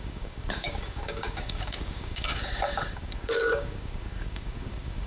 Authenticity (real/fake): fake